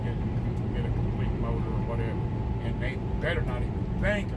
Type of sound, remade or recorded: recorded